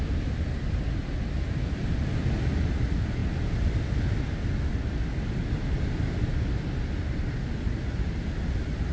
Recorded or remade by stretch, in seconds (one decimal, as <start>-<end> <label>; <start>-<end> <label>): 0.0-8.9 recorded

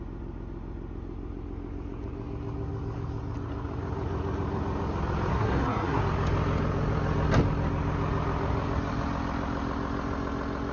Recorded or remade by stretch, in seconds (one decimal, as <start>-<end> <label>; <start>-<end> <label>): 0.0-5.3 recorded; 5.3-6.0 remade; 6.0-10.7 recorded

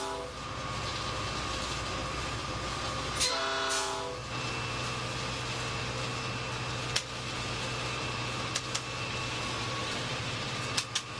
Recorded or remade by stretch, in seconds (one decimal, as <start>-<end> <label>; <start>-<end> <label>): 0.0-2.0 recorded; 2.0-3.3 remade; 3.3-9.8 recorded; 9.8-10.6 remade; 10.6-11.2 recorded